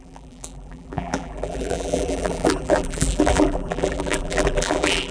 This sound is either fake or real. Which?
fake